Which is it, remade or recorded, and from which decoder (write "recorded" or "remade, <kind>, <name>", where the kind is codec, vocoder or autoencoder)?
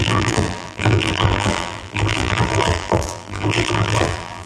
remade, vocoder, BigVGAN v2